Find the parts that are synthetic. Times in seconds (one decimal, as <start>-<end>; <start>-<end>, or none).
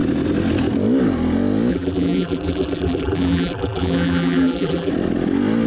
1.7-4.9